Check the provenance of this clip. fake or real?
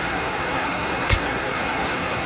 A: fake